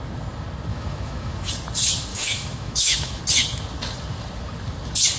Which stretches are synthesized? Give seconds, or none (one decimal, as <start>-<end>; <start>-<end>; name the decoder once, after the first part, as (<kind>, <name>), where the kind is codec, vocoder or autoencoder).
0.7-1.5 (autoencoder, DAC-VAE); 2.1-3.2